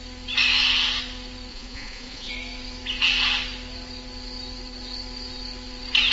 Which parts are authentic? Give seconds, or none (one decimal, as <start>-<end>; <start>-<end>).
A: 0.0-1.5; 2.3-6.1